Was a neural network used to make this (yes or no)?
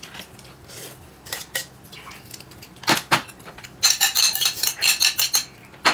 no